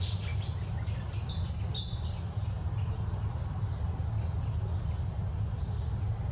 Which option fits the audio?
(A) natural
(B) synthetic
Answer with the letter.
A